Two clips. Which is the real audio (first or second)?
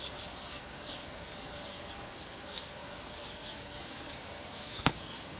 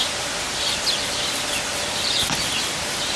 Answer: second